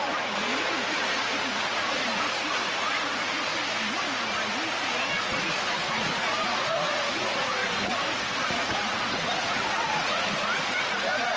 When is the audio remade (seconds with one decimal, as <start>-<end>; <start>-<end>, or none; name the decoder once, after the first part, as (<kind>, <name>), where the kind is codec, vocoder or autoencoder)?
0.0-3.5 (vocoder, Vocos); 5.2-7.6; 8.1-11.4